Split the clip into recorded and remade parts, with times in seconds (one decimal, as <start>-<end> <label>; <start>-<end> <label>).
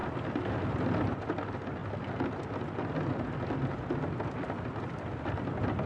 0.0-5.9 recorded